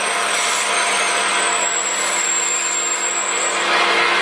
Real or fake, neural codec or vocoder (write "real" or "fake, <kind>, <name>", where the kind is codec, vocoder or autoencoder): real